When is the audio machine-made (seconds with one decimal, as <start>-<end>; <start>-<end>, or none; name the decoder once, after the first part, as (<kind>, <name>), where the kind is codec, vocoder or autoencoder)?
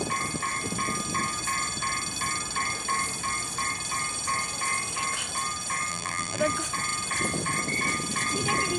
5.9-6.4 (vocoder, BigVGAN v2)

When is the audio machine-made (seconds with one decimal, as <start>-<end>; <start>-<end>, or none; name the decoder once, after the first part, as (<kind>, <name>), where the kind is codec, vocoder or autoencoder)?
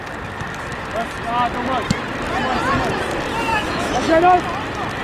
3.5-4.2 (autoencoder, DAC-VAE)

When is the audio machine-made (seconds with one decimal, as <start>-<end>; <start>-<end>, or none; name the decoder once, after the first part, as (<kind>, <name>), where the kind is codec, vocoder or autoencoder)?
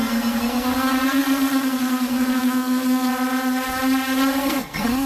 0.0-3.1 (codec, SNAC); 4.4-5.1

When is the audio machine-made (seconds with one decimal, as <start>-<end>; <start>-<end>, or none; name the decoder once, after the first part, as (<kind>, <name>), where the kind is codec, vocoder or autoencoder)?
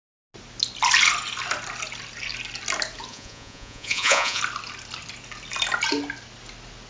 3.1-4.4 (vocoder, Vocos)